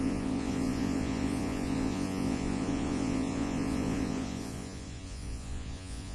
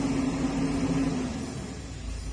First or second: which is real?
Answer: second